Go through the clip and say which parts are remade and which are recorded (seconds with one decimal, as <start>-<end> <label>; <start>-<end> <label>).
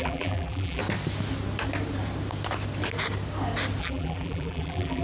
0.0-0.8 remade; 0.8-3.8 recorded; 3.8-5.0 remade